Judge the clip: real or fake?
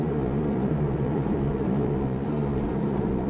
fake